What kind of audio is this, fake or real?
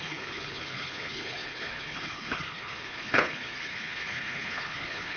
fake